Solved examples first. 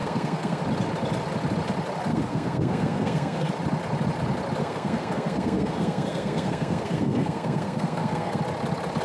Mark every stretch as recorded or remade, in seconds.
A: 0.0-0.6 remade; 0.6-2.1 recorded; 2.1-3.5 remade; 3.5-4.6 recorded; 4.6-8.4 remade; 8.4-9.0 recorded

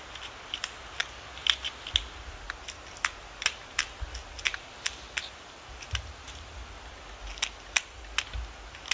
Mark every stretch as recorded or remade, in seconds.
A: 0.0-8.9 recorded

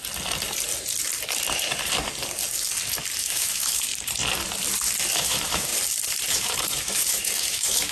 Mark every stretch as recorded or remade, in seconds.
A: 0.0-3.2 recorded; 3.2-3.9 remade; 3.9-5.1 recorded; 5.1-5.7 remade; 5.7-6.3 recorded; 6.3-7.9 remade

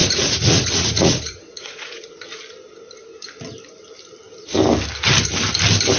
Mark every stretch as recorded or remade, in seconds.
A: 0.0-2.1 remade; 2.1-6.0 recorded

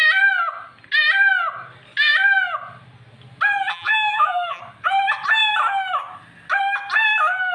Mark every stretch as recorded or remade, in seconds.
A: 0.0-3.7 recorded; 3.7-4.6 remade; 4.6-7.5 recorded

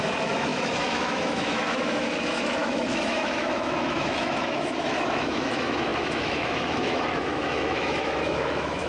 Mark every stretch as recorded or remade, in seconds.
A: 0.0-8.9 remade